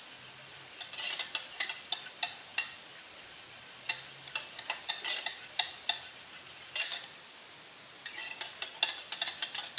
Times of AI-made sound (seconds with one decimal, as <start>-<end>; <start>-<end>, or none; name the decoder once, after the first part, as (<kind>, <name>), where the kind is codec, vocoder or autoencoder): none